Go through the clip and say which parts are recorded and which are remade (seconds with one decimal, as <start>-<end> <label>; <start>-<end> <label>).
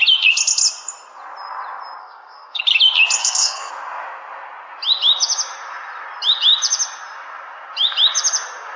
0.0-2.0 recorded; 2.0-2.6 remade; 2.6-3.2 recorded; 3.2-3.7 remade; 3.7-8.8 recorded